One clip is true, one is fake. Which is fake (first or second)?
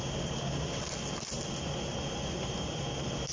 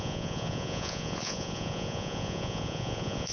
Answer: second